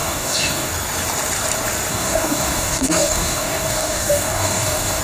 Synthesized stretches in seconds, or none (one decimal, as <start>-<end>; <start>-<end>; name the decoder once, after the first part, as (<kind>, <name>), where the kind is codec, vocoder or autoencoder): 0.0-0.7 (codec, DAC); 1.9-5.0